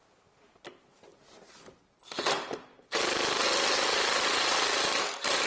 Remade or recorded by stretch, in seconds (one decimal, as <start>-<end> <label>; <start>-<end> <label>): 0.0-1.1 remade; 1.1-2.3 recorded; 2.3-2.7 remade; 2.7-5.0 recorded; 5.0-5.5 remade